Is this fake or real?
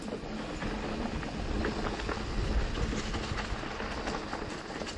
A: real